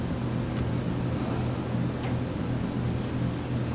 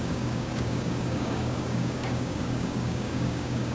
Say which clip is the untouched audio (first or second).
first